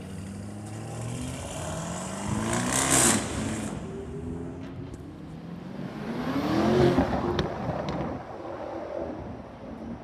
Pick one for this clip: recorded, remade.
recorded